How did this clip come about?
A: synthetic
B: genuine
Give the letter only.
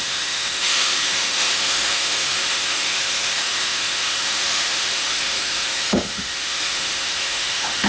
A